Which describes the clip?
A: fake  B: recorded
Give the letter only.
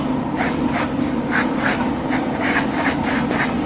B